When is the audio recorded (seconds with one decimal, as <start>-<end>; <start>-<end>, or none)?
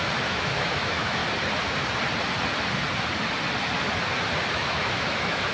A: 1.2-4.5